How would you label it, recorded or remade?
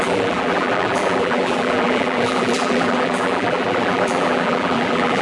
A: remade